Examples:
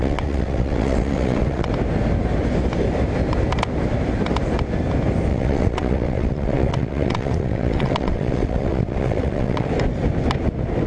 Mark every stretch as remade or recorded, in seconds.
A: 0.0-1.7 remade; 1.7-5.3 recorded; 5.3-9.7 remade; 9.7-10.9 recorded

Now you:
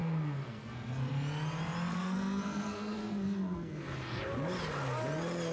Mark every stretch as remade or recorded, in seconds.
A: 0.0-1.1 remade; 1.1-1.9 recorded; 1.9-4.2 remade; 4.2-5.5 recorded